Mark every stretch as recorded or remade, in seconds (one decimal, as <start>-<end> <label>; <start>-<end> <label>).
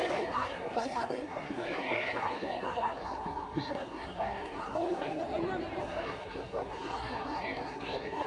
0.0-5.2 remade; 5.2-5.8 recorded; 5.8-8.3 remade